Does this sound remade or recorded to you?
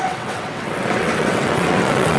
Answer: remade